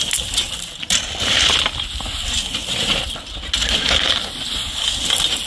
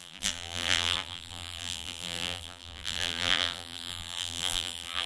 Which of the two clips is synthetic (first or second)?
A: second